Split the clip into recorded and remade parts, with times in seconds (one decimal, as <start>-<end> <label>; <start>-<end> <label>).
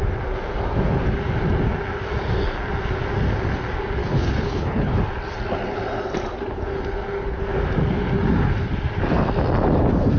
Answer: 0.0-4.0 recorded; 4.0-5.0 remade; 5.0-10.2 recorded